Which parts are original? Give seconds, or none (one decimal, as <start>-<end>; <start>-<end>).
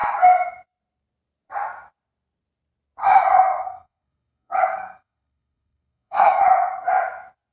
0.0-3.0; 6.4-7.5